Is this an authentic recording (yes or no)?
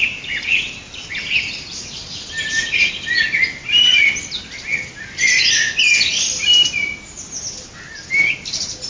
yes